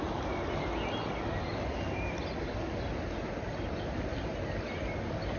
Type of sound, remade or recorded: recorded